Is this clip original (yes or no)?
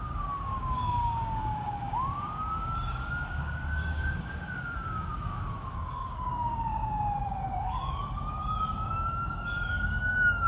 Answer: no